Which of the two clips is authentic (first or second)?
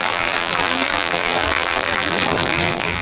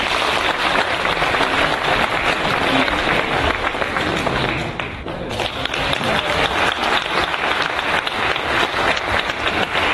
second